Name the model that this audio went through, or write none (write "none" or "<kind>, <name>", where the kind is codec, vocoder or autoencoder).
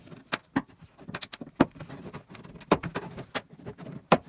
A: none